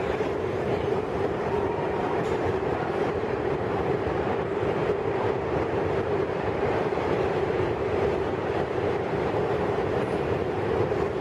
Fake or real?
fake